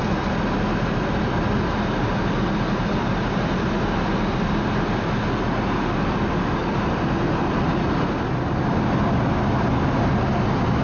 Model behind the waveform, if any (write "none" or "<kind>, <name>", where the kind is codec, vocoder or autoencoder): none